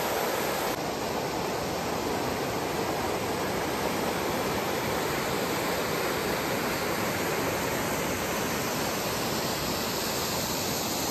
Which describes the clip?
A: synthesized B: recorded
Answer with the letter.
B